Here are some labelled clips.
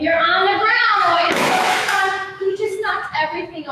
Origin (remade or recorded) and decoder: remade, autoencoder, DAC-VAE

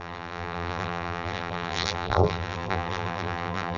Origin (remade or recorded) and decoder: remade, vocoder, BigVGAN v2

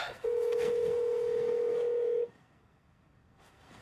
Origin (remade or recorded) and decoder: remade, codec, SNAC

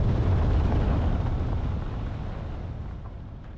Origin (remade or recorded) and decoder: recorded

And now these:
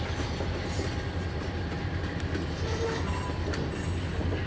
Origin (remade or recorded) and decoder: recorded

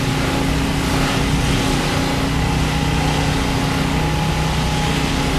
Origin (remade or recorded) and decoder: recorded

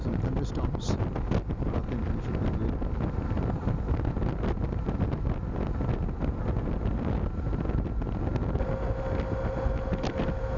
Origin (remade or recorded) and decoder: recorded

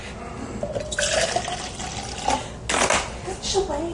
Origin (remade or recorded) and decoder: recorded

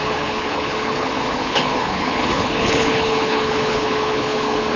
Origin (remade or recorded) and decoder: remade, codec, HILCodec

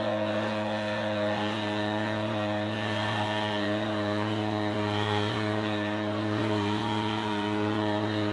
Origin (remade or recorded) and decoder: remade, vocoder, Vocos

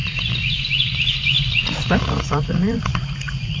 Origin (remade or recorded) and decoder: remade, vocoder, Vocos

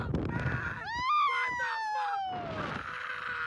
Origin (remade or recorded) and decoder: recorded